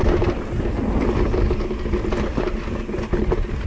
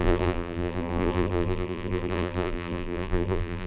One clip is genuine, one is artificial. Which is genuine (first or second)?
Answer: first